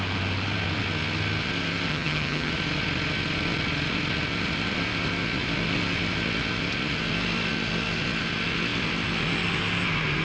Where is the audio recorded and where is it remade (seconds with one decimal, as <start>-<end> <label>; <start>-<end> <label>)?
0.0-1.9 recorded; 1.9-2.5 remade; 2.5-10.2 recorded

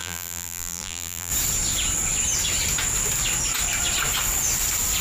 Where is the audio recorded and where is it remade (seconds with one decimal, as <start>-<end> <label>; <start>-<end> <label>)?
0.0-1.3 remade; 1.3-5.0 recorded

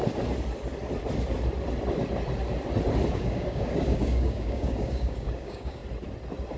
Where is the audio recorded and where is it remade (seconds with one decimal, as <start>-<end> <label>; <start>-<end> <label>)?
0.0-3.1 recorded; 3.1-5.8 remade; 5.8-6.6 recorded

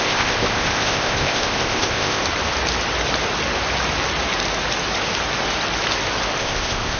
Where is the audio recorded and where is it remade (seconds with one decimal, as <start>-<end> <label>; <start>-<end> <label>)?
0.0-2.2 remade; 2.2-6.4 recorded; 6.4-7.0 remade

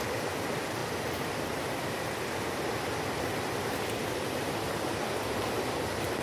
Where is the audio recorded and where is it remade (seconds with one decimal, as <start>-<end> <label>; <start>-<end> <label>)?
0.0-6.2 recorded

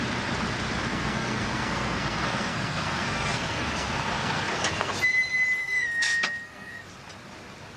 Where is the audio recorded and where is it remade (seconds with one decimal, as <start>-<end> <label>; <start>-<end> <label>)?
0.0-0.9 recorded; 0.9-4.9 remade; 4.9-5.6 recorded; 5.6-6.9 remade; 6.9-7.8 recorded

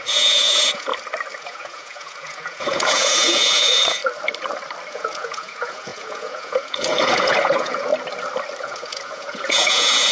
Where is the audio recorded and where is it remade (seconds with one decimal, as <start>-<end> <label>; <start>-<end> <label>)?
0.0-0.9 remade; 0.9-1.4 recorded; 1.4-4.0 remade; 4.0-4.9 recorded; 4.9-7.9 remade; 7.9-8.6 recorded; 8.6-10.1 remade